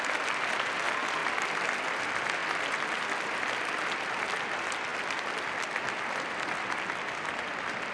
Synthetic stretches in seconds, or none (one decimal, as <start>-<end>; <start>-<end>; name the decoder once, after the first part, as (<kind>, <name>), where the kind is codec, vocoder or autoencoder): none